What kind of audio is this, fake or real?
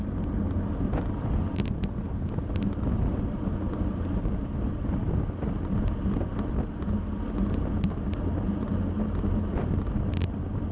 real